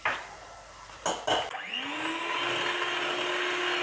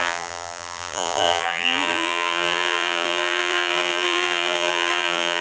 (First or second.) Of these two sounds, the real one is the first